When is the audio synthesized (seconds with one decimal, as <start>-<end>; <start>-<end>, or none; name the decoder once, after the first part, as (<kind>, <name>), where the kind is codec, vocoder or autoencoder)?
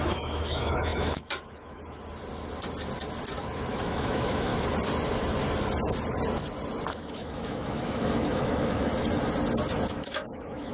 0.0-2.0 (autoencoder, DAC-VAE); 3.7-4.5; 6.9-8.9; 9.9-10.7